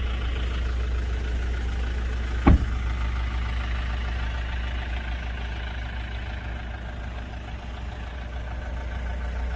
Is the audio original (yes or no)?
yes